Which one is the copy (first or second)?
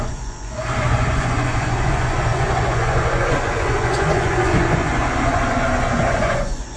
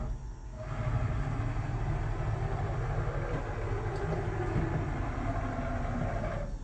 first